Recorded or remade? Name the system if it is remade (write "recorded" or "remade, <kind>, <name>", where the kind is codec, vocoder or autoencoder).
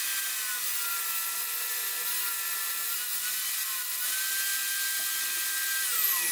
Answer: recorded